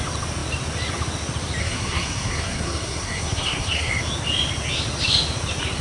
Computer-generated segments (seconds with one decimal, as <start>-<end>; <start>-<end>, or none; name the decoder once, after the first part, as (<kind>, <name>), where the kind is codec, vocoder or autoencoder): 1.6-4.0 (codec, SNAC)